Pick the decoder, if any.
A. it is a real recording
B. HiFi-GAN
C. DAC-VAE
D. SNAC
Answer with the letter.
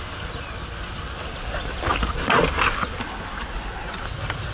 A